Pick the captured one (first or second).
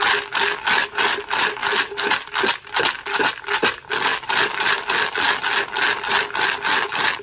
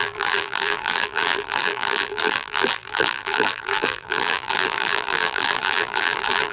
first